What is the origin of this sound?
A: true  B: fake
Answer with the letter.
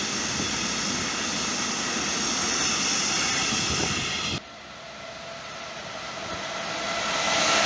A